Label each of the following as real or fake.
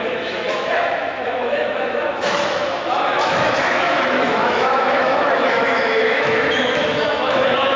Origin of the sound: fake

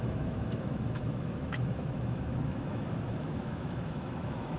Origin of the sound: fake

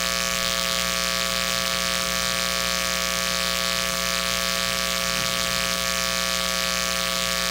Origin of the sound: real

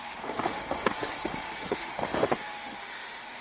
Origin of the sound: fake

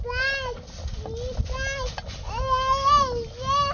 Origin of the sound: real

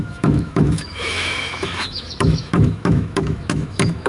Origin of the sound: fake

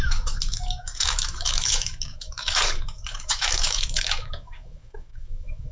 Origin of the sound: fake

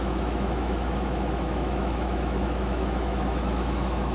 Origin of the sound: fake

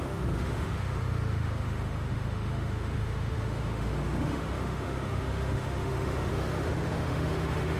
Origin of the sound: fake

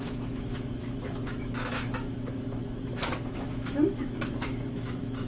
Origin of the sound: fake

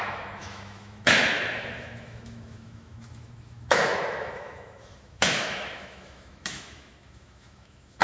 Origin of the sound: fake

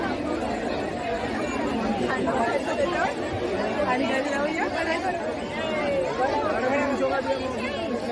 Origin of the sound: real